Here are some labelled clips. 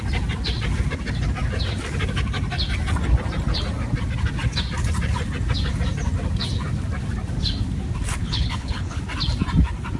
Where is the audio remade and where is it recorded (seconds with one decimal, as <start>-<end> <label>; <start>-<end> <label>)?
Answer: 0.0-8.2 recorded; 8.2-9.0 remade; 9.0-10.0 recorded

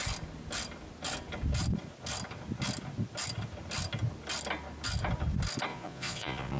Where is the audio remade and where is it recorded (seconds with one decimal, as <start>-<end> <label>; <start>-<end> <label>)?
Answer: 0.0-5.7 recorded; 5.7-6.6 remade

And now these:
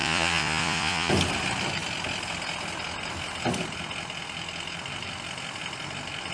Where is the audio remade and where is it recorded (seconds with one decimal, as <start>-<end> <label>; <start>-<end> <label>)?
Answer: 0.0-1.1 remade; 1.1-6.3 recorded

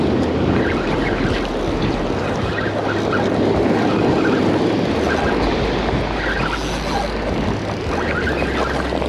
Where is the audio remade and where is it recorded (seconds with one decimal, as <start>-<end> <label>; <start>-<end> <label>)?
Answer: 0.0-9.1 recorded